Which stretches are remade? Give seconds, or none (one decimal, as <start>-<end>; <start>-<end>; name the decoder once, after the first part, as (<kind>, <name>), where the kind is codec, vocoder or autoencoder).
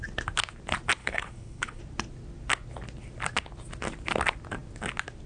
1.0-1.8 (codec, HILCodec)